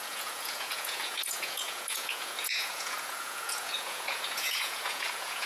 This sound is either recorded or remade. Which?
remade